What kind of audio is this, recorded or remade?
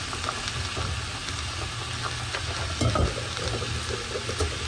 recorded